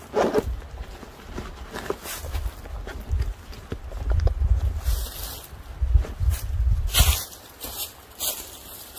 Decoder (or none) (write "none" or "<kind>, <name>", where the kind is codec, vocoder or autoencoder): none